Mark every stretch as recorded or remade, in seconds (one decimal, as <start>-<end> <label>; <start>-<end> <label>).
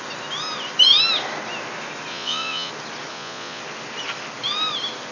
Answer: 0.0-2.1 recorded; 2.1-2.7 remade; 2.7-3.1 recorded; 3.1-3.6 remade; 3.6-5.1 recorded